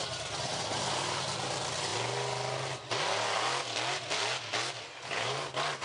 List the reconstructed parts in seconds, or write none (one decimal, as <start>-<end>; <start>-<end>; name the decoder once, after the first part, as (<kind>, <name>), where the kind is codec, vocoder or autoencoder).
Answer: none